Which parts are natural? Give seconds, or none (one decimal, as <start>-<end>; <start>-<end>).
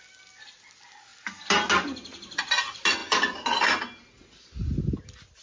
0.0-5.4